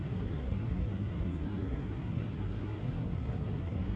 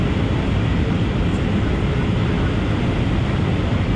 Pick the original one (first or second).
second